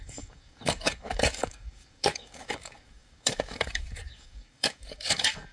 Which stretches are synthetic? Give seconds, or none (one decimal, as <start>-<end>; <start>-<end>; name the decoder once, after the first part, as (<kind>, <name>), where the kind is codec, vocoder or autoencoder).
0.0-5.5 (codec, DAC)